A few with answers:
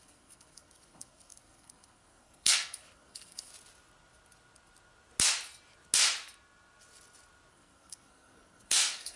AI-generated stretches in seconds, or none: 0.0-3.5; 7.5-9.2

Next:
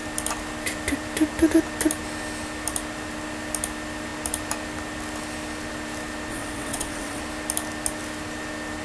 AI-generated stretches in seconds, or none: 6.3-7.2

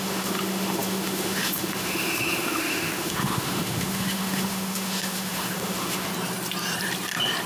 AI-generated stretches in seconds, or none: 0.0-6.1

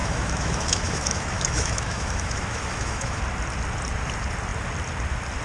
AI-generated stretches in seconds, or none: 0.0-3.2

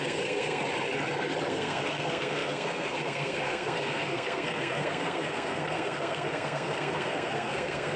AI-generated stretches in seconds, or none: 0.0-0.6; 1.5-8.0

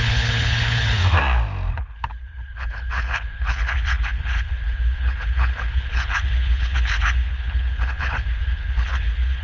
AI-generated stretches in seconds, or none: 0.0-1.0; 1.7-9.4

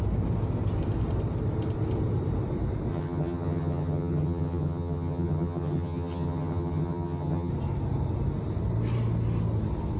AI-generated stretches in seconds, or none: 2.9-7.5